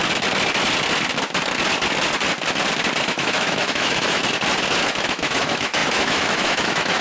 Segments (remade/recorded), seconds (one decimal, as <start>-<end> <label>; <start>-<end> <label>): 0.0-3.0 recorded; 3.0-4.2 remade; 4.2-4.9 recorded; 4.9-7.0 remade